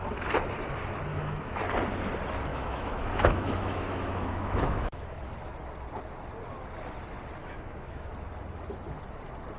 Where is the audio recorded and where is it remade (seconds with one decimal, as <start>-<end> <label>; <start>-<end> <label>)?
0.0-1.1 recorded; 1.1-1.6 remade; 1.6-2.5 recorded; 2.5-5.2 remade; 5.2-7.4 recorded; 7.4-8.1 remade; 8.1-9.6 recorded